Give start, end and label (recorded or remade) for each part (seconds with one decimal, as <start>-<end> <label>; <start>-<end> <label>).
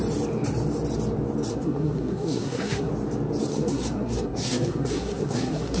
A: 0.0-1.5 recorded; 1.5-2.9 remade; 2.9-3.5 recorded; 3.5-5.8 remade